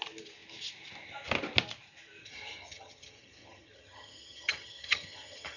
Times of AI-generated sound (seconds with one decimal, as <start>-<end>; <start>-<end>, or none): 2.2-5.6